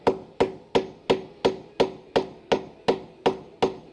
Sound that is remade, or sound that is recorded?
recorded